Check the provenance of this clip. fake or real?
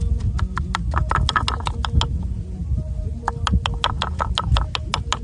real